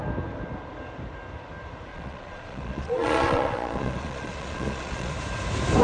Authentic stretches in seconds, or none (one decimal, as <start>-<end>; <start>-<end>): 0.0-1.9; 5.1-5.8